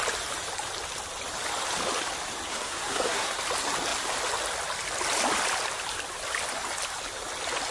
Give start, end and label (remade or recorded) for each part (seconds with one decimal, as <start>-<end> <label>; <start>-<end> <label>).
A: 0.0-2.5 recorded; 2.5-3.4 remade; 3.4-7.7 recorded

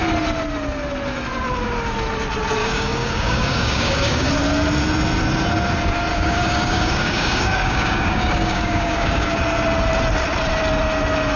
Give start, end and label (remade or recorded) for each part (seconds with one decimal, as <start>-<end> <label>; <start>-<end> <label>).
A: 0.0-2.6 recorded; 2.6-4.3 remade; 4.3-6.1 recorded; 6.1-9.4 remade; 9.4-11.4 recorded

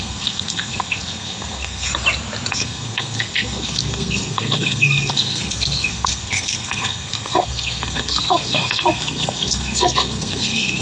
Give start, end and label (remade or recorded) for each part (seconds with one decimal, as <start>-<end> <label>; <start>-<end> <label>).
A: 0.0-1.9 remade; 1.9-2.5 recorded; 2.5-10.8 remade

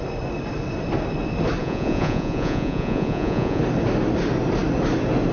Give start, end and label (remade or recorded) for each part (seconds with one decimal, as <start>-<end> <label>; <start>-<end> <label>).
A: 0.0-1.6 recorded; 1.6-3.6 remade; 3.6-5.3 recorded

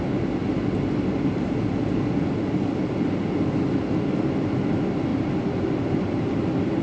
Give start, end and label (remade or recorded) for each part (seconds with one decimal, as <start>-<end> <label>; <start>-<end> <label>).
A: 0.0-5.1 recorded; 5.1-6.8 remade